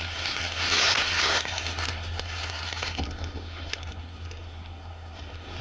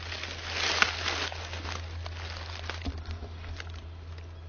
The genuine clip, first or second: second